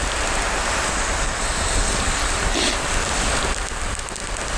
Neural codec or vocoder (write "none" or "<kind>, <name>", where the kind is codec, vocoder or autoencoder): none